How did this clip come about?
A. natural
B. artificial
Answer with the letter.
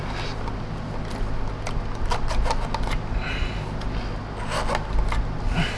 A